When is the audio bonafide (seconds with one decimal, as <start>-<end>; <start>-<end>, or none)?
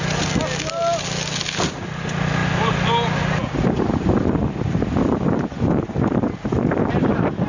0.0-7.5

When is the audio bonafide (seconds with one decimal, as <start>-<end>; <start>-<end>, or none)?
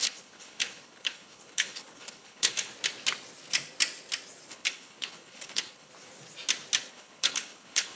2.7-4.5; 5.9-6.9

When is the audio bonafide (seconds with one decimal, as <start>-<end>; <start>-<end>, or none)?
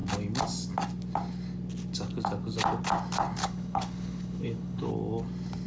0.0-3.4; 4.9-5.7